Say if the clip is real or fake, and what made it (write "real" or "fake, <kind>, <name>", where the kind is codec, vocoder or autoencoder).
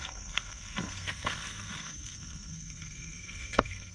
fake, codec, SNAC